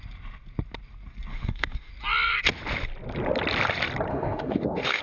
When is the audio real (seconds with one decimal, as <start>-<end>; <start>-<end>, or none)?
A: 0.0-1.3; 1.9-4.1